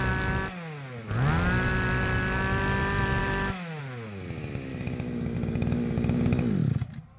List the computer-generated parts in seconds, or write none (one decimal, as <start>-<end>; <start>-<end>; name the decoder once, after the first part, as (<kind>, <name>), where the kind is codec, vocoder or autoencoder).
3.2-3.8 (autoencoder, DAC-VAE); 4.7-6.4